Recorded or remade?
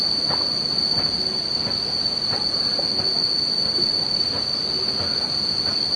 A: recorded